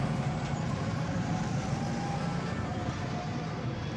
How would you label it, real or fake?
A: fake